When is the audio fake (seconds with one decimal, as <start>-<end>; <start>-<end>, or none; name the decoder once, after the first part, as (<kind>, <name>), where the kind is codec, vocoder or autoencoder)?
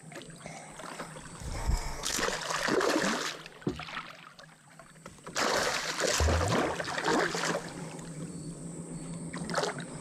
1.6-2.2 (codec, SNAC)